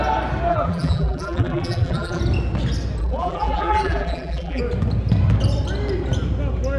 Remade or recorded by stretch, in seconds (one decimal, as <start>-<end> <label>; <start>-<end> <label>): 0.0-0.5 recorded; 0.5-2.2 remade; 2.2-3.0 recorded; 3.0-4.6 remade; 4.6-6.8 recorded